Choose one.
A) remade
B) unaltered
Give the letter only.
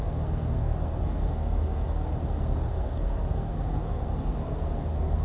A